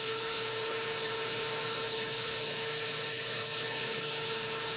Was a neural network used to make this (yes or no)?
yes